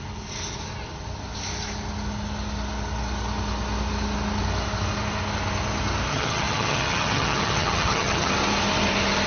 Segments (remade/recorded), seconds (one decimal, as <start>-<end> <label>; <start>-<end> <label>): 0.0-6.1 recorded; 6.1-8.3 remade; 8.3-9.3 recorded